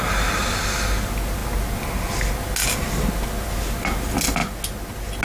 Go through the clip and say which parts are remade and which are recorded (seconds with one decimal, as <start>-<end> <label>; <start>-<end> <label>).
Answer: 0.0-5.2 recorded